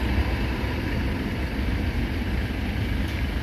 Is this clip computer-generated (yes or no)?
no